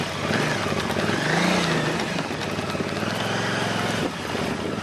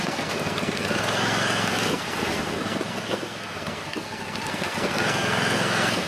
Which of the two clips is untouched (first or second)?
first